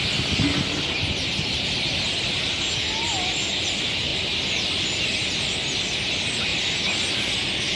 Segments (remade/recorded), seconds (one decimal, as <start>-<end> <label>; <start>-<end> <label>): 0.0-6.5 recorded; 6.5-7.1 remade; 7.1-7.8 recorded